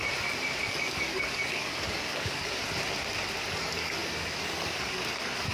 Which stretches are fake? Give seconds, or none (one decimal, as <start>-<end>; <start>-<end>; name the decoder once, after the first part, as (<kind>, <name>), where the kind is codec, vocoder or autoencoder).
0.6-2.6 (codec, DAC); 3.5-5.5